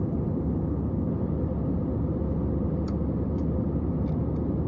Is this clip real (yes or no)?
yes